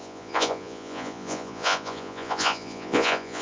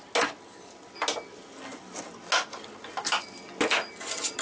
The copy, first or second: first